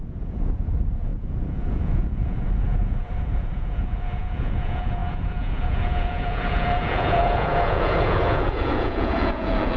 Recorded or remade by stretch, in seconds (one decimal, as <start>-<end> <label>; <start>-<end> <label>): 0.0-9.8 remade